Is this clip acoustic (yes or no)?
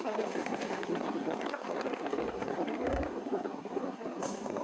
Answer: no